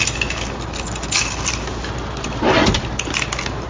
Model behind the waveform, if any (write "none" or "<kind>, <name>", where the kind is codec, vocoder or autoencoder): none